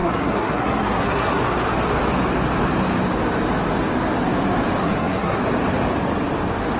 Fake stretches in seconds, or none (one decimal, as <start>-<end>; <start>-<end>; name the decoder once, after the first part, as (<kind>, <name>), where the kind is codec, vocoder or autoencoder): 0.0-1.4 (codec, SNAC); 4.8-5.4